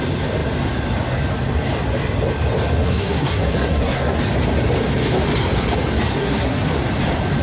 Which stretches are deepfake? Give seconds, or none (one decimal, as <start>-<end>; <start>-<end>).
2.8-4.2; 6.2-6.8